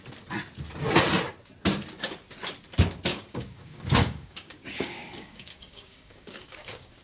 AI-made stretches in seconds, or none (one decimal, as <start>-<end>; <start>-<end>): 3.1-7.0

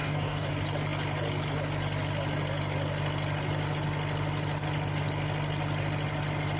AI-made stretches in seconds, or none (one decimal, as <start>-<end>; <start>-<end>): 0.0-0.5

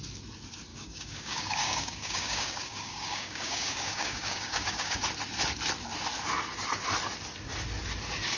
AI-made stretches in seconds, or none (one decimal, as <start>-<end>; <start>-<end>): 0.7-5.0

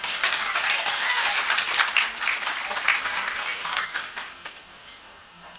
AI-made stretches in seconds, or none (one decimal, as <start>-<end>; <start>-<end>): 0.0-1.4; 3.0-5.6

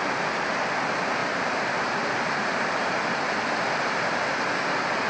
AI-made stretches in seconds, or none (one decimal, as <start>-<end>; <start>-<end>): none

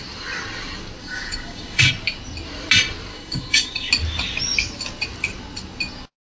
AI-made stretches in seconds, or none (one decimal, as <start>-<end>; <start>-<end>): 1.0-1.9; 3.1-3.9

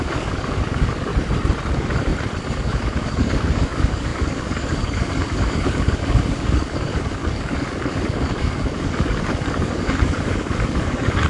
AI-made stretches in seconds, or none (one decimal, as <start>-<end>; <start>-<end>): 0.0-1.1; 1.7-2.1; 2.6-11.3

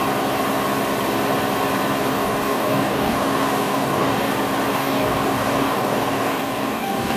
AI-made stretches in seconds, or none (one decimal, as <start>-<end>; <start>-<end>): 2.1-4.3; 4.7-7.2